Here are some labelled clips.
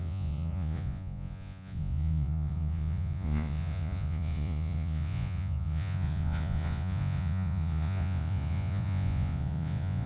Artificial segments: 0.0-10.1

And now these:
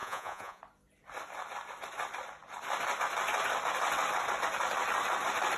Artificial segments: 0.0-0.6